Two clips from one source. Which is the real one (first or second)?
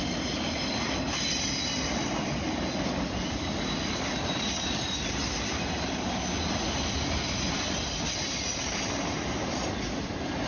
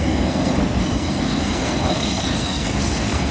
first